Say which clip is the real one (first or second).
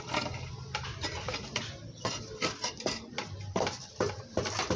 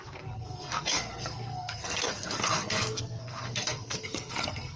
first